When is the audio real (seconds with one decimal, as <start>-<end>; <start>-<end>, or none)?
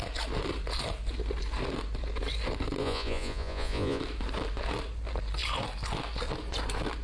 0.0-2.8; 4.0-7.0